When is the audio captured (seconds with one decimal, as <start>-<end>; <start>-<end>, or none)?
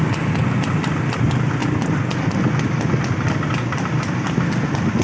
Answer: 0.0-5.0